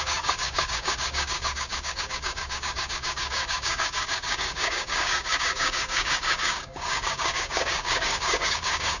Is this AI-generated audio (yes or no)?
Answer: yes